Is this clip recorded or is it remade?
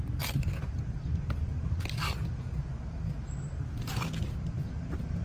recorded